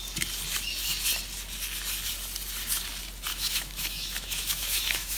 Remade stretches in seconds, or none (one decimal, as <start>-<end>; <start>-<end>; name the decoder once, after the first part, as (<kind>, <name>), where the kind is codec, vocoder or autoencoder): 3.3-5.2 (autoencoder, DAC-VAE)